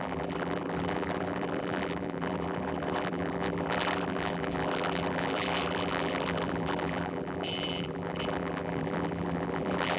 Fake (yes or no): yes